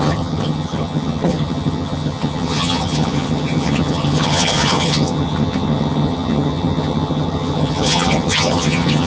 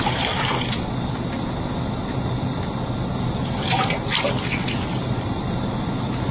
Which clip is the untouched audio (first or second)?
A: second